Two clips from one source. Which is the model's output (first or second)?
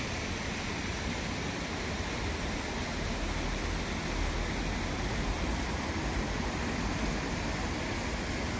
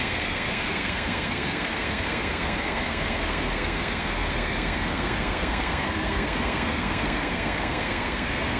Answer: second